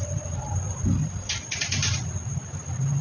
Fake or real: real